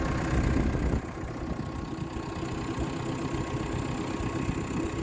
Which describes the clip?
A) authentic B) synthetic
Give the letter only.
A